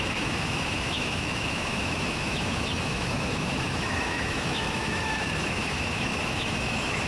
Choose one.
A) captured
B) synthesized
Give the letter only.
B